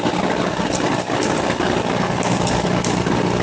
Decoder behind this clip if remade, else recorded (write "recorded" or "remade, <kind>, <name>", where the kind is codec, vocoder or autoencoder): recorded